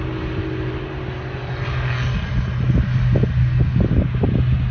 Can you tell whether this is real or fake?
real